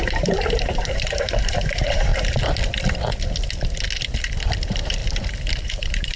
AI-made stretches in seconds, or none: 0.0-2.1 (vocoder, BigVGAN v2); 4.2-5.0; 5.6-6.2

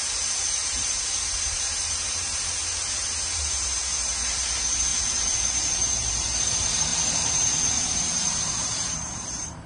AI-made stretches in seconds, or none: 0.0-9.7 (vocoder, BigVGAN v2)

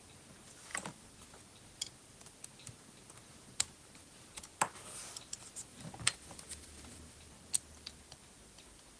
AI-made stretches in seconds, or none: none

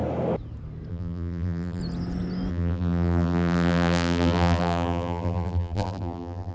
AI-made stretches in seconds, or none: 0.9-1.8 (vocoder, BigVGAN v2); 2.5-6.5

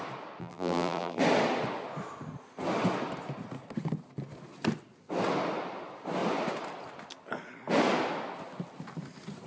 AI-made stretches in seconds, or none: 0.4-1.2 (vocoder, BigVGAN v2)

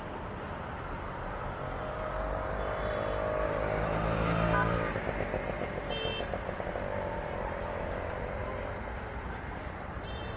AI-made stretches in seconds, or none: none

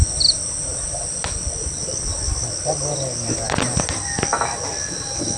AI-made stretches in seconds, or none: none

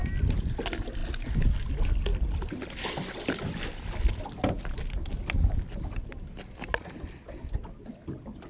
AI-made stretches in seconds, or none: 2.1-6.1 (vocoder, BigVGAN v2)